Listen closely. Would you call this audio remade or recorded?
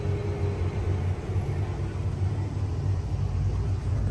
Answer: recorded